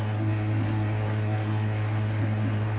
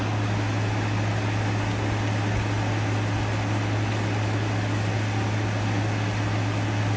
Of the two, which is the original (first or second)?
second